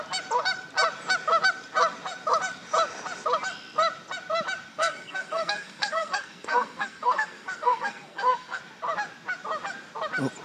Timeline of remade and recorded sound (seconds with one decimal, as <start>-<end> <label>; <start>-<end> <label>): 0.0-4.7 recorded; 4.7-8.6 remade; 8.6-10.4 recorded